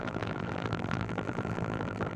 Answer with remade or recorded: remade